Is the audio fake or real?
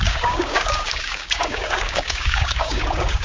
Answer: fake